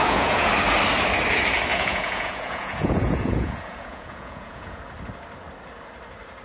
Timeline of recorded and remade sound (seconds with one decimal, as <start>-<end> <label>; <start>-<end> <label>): 0.0-0.5 remade; 0.5-1.7 recorded; 1.7-4.8 remade; 4.8-6.4 recorded